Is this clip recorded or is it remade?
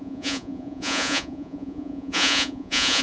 remade